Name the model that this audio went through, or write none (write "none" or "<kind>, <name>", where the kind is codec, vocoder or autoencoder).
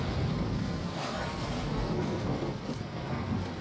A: codec, SNAC